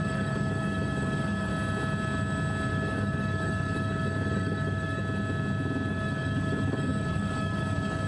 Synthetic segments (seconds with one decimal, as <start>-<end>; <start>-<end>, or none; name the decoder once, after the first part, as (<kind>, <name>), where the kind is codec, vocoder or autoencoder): 0.0-1.5 (codec, DAC); 2.7-5.0; 5.9-8.1

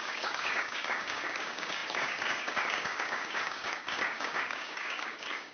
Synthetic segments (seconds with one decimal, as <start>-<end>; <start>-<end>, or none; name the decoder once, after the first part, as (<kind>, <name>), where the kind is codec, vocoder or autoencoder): 0.0-5.5 (codec, DAC)